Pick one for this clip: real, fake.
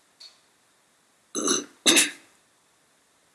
real